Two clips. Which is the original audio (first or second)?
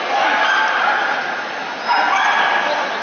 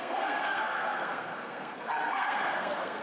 first